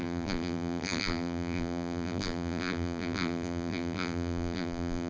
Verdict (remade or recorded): remade